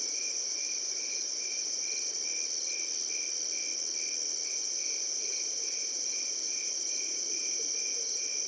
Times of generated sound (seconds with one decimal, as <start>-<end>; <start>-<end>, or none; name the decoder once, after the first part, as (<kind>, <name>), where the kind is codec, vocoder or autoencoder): 0.0-1.8 (vocoder, BigVGAN v2); 4.5-8.5